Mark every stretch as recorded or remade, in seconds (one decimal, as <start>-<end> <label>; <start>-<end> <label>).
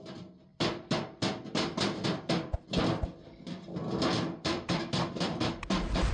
0.0-0.5 remade; 0.5-3.8 recorded; 3.8-6.1 remade